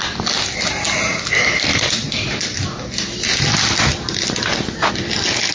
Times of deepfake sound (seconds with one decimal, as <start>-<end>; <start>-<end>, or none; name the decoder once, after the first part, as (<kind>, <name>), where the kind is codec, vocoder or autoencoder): none